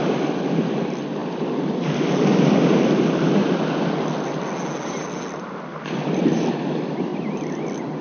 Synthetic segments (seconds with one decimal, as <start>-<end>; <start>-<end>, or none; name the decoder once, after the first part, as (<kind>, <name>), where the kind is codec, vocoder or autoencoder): 1.2-4.3 (vocoder, BigVGAN v2); 7.1-8.0